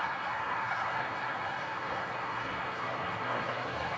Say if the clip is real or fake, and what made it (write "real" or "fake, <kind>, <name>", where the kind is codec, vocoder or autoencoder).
fake, codec, SNAC